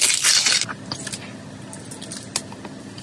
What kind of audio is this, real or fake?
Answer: real